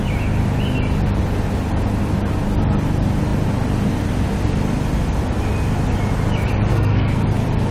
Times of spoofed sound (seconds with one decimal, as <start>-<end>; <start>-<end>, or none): 6.7-7.2